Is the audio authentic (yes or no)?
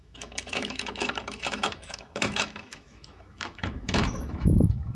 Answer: no